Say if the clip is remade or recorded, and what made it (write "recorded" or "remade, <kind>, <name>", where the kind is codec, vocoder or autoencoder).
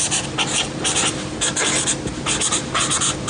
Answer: recorded